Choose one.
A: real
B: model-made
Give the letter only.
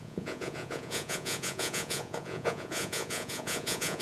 B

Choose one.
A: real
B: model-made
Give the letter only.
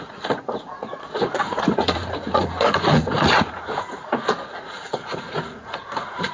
B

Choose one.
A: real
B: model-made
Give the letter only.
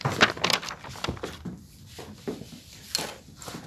A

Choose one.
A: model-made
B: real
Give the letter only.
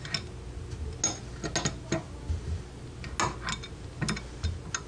B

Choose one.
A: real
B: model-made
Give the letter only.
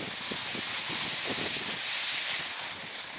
A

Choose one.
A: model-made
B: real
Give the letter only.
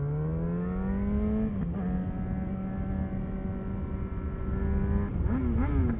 B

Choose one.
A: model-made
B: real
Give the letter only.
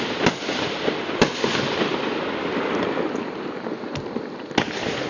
B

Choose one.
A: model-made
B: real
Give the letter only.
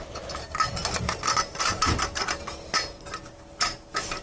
B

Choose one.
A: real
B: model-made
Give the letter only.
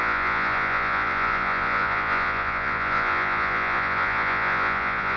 B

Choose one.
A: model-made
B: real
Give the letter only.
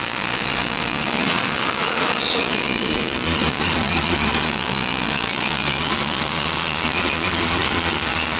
A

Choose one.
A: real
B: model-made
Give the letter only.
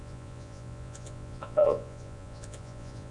B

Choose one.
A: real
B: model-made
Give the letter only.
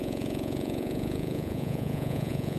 B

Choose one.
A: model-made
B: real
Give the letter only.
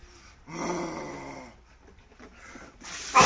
B